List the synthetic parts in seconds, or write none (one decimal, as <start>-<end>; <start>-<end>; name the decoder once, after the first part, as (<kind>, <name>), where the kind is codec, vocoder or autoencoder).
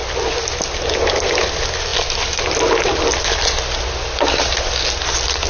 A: none